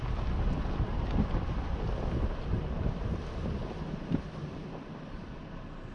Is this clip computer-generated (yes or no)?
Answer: no